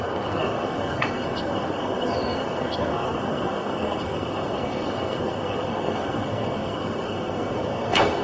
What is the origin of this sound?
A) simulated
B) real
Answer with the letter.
A